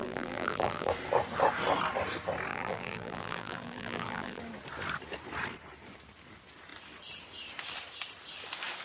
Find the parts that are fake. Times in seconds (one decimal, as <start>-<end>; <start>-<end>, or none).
0.0-0.9; 2.5-4.4